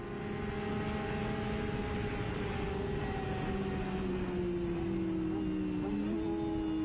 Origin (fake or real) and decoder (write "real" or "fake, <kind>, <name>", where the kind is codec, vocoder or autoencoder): real